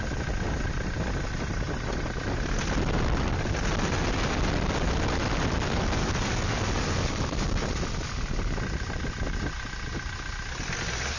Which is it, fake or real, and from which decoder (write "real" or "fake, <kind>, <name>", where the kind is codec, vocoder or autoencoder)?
real